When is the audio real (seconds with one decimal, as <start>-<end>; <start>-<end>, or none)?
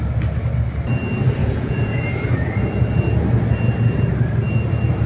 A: 0.0-1.4; 2.0-5.1